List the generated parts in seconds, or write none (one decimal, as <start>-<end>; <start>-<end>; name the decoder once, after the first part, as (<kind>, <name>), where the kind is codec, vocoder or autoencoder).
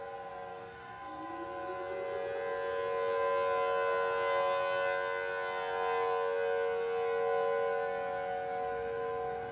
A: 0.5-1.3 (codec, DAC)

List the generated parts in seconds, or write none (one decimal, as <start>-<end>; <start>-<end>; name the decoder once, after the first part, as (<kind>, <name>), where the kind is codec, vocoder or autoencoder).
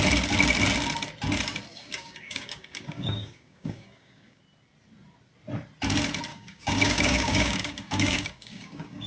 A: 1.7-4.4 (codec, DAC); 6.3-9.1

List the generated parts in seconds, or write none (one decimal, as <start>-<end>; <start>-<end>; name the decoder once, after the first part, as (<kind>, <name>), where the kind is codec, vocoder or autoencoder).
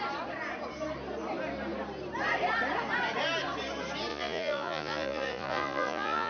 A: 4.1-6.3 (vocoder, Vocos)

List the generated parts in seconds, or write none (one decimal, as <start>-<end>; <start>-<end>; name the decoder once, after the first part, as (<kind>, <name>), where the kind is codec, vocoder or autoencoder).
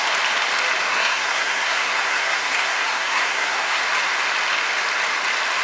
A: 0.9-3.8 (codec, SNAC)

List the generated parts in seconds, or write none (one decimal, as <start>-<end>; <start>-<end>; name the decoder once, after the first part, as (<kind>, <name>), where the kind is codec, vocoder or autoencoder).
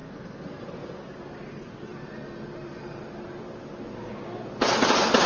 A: none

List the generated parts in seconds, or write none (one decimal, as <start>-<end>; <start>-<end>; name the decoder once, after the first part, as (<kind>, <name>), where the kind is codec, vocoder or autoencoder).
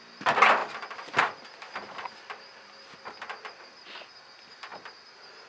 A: none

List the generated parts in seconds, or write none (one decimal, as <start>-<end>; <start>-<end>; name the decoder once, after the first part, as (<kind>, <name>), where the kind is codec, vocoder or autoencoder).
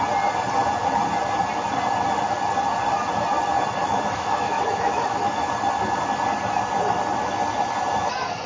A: 3.8-5.5 (autoencoder, DAC-VAE)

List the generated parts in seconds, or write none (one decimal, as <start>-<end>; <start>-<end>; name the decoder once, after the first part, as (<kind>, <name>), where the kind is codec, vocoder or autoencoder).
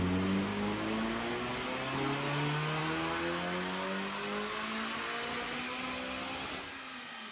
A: 0.5-1.3 (codec, DAC)